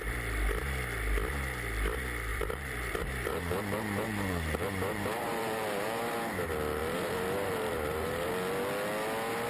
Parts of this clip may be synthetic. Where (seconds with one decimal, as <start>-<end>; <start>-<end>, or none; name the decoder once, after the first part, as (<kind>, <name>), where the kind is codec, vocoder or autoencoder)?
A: 2.3-6.0 (vocoder, BigVGAN v2); 6.8-8.3